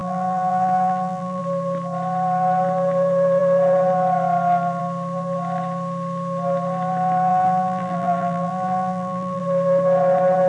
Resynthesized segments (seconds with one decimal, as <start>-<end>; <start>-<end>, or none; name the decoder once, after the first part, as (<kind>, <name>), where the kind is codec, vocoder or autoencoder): 0.0-1.4 (vocoder, BigVGAN v2); 7.3-9.4

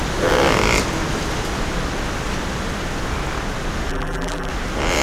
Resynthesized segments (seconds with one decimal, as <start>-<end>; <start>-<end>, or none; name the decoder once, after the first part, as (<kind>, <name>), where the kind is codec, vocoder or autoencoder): 3.9-4.5 (vocoder, BigVGAN v2)

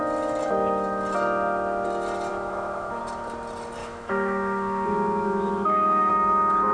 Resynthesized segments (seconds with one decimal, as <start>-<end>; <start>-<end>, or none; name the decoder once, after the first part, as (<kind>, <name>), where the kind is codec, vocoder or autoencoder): 2.3-3.0 (autoencoder, DAC-VAE); 3.8-6.1